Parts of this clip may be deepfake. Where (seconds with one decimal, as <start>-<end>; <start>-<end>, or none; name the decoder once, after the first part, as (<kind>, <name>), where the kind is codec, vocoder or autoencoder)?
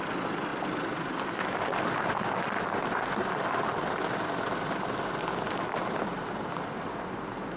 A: none